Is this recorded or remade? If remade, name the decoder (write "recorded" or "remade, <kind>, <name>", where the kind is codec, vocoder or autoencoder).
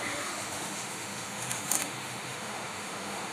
remade, autoencoder, DAC-VAE